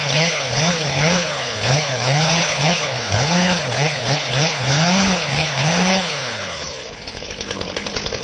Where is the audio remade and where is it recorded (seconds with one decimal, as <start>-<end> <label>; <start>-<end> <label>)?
0.0-8.2 remade